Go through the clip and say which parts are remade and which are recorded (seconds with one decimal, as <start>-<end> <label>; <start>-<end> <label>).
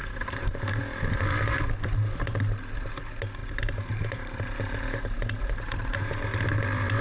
0.0-0.8 remade; 0.8-3.4 recorded; 3.4-7.0 remade